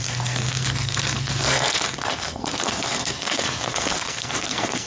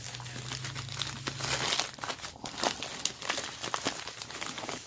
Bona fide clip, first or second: second